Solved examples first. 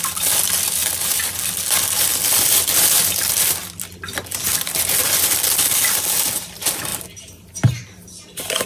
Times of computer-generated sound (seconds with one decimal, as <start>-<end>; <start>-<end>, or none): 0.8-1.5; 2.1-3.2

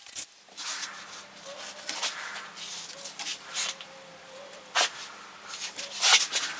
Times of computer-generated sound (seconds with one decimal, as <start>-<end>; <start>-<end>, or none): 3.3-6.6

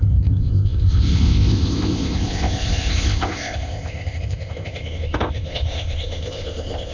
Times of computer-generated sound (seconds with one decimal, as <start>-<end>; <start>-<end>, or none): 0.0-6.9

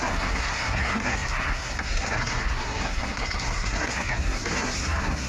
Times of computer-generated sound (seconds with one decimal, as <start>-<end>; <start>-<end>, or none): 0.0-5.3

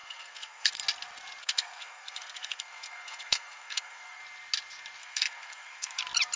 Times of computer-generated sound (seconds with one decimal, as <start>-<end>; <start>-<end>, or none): 0.0-0.7; 1.4-4.2; 5.0-6.0

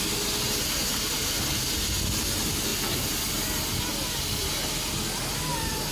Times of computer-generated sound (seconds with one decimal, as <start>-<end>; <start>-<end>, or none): none

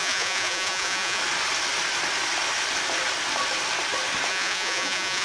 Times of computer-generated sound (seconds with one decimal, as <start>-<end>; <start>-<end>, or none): 0.0-1.2; 4.3-5.2